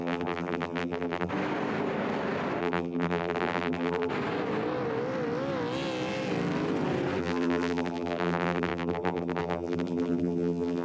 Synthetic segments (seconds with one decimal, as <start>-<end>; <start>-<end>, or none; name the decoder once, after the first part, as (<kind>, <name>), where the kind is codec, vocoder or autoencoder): 0.0-1.3 (vocoder, BigVGAN v2); 2.6-4.1; 7.2-10.8